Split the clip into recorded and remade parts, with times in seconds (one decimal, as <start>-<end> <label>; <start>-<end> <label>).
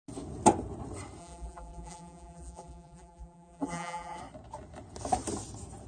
0.0-1.2 recorded; 1.2-4.2 remade; 4.2-5.9 recorded